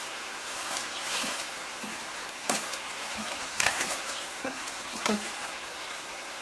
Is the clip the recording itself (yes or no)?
no